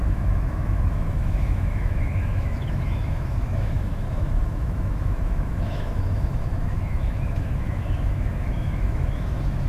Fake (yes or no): yes